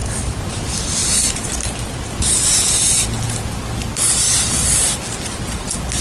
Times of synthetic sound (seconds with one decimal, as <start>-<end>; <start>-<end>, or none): 0.0-0.5